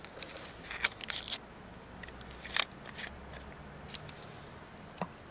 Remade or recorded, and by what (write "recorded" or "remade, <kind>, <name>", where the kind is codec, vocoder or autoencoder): recorded